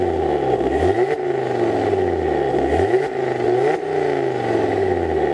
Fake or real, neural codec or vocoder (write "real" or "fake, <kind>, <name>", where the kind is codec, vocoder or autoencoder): real